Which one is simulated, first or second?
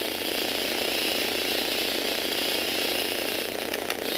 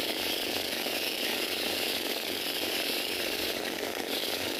second